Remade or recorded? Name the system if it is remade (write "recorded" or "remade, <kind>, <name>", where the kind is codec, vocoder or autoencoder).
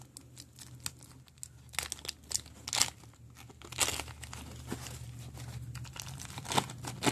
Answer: recorded